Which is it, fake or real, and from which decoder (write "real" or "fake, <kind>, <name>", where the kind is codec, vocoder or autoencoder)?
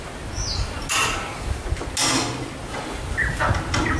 real